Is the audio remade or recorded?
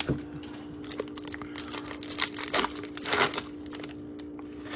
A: recorded